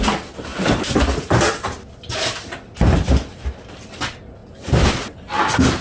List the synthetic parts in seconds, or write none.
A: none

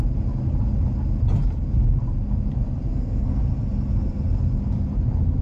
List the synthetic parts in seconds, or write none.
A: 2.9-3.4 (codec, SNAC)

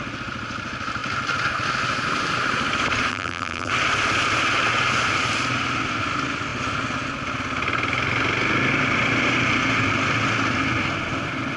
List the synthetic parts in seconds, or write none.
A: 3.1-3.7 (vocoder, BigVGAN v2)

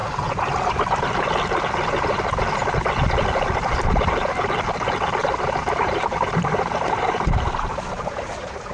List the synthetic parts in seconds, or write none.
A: 0.0-2.1 (vocoder, BigVGAN v2); 5.2-8.7